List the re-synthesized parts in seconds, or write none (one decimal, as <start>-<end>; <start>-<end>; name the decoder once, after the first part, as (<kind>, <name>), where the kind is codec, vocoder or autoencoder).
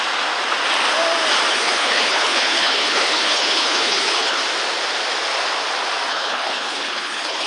1.5-4.4 (codec, HILCodec); 6.1-7.5